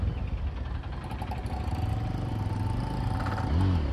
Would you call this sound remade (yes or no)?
no